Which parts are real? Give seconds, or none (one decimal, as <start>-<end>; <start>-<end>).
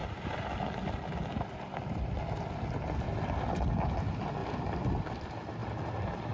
0.0-6.3